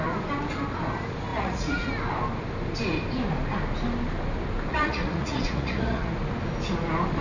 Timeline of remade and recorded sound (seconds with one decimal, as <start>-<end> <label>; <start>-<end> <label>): 0.0-1.3 recorded; 1.3-1.9 remade; 1.9-4.7 recorded; 4.7-6.1 remade; 6.1-7.2 recorded